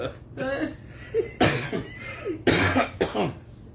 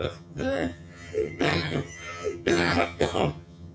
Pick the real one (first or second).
first